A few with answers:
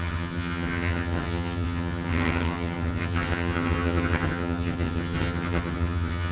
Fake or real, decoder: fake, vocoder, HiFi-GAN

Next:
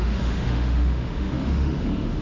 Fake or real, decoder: fake, autoencoder, DAC-VAE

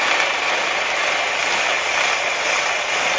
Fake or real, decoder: real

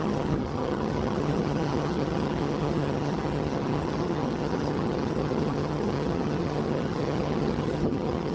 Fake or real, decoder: fake, vocoder, HiFi-GAN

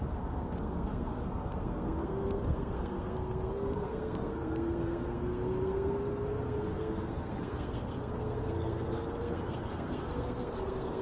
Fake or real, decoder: fake, codec, SNAC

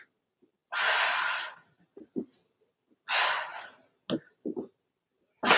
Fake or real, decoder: real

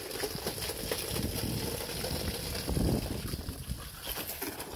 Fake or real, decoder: real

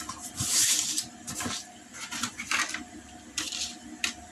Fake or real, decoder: real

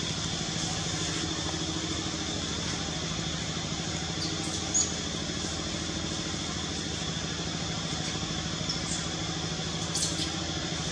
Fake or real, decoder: fake, vocoder, BigVGAN v2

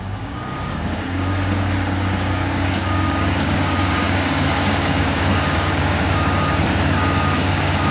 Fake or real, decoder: fake, codec, DAC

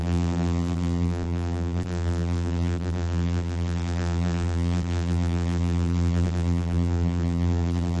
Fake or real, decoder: fake, vocoder, BigVGAN v2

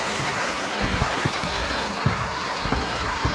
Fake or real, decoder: fake, codec, SNAC